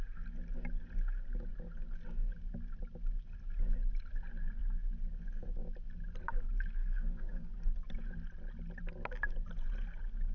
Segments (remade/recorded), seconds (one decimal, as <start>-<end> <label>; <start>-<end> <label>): 0.0-6.8 recorded; 6.8-7.5 remade; 7.5-10.3 recorded